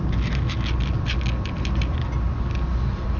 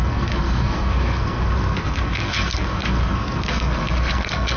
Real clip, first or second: first